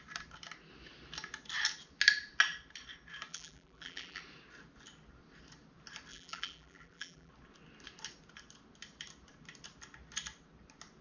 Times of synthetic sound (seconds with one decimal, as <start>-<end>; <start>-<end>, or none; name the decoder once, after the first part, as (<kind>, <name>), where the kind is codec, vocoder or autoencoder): 3.3-4.2 (vocoder, BigVGAN v2); 6.1-7.3